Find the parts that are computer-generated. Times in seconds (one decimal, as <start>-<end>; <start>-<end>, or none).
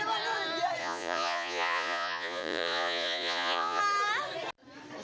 0.8-3.8